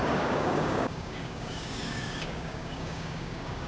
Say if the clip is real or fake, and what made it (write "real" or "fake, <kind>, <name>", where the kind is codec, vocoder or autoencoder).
fake, codec, DAC